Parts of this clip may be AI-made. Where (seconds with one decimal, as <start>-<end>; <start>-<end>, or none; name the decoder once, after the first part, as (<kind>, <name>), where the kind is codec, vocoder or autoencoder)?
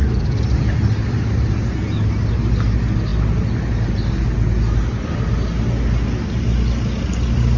none